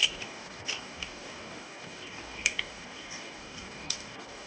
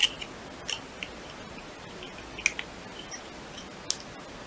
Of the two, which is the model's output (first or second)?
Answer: first